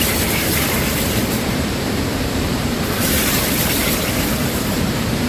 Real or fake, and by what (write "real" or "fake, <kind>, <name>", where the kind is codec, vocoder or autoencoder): fake, vocoder, BigVGAN v2